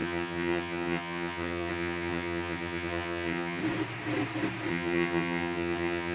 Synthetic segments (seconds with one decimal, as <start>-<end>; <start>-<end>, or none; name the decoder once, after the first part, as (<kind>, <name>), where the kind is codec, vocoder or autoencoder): 0.0-3.6 (vocoder, HiFi-GAN); 4.7-6.1